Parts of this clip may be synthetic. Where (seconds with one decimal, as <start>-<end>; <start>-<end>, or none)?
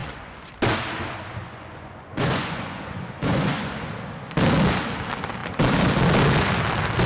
0.0-0.5; 1.4-3.9